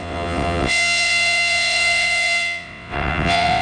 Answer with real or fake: fake